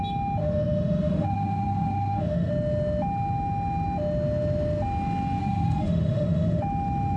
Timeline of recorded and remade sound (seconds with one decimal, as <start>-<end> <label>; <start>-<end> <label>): 0.0-0.4 recorded; 0.4-2.5 remade; 2.5-5.4 recorded; 5.4-6.6 remade; 6.6-7.2 recorded